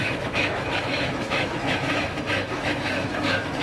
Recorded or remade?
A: remade